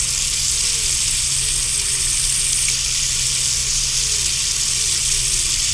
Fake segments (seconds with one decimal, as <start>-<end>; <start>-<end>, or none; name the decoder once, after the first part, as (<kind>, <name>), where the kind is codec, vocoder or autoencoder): none